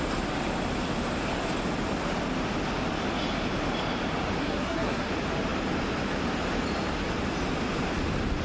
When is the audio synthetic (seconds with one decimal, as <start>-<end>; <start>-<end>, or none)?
4.4-5.1